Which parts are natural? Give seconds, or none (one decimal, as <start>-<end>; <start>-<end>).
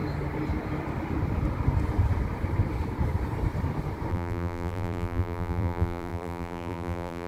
0.0-4.1